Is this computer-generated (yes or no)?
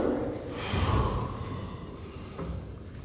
no